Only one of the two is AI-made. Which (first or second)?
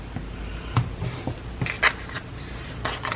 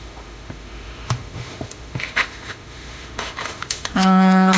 second